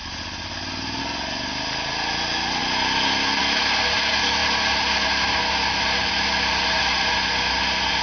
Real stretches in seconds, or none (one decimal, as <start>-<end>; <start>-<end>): 0.0-8.0